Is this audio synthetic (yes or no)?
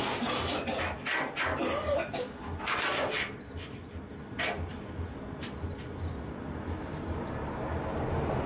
no